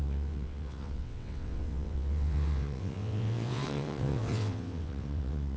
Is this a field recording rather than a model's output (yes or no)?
no